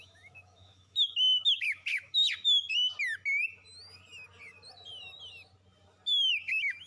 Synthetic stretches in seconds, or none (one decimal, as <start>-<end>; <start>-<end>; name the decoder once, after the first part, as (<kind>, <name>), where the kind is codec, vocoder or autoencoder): 0.0-2.2 (autoencoder, DAC-VAE); 6.3-6.9